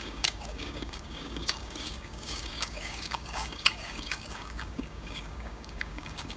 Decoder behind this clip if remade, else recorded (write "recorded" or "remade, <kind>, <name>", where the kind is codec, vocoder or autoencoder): remade, codec, DAC